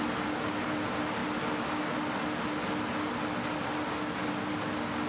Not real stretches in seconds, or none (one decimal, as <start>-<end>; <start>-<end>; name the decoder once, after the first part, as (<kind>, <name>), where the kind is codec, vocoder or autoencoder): none